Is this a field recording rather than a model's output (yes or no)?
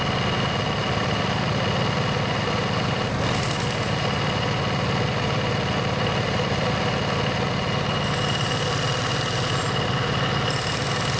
yes